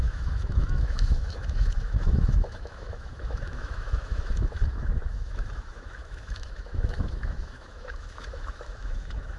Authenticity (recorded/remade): remade